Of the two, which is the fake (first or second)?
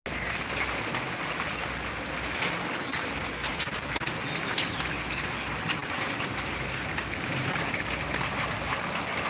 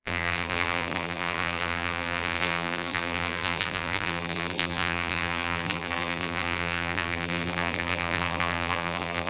second